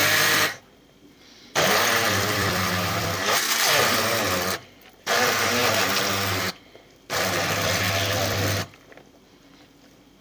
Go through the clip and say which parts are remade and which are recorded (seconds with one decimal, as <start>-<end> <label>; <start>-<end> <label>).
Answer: 0.0-5.6 remade; 5.6-6.5 recorded; 6.5-10.2 remade